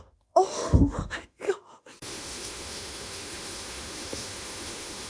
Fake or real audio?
fake